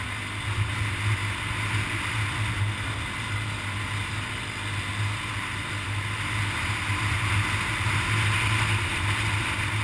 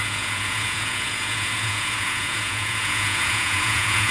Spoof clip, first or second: second